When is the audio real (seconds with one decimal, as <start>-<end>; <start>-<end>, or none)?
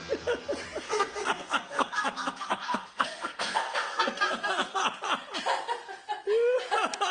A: 0.0-0.8; 4.8-7.1